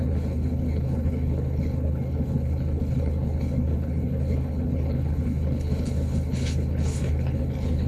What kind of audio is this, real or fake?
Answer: fake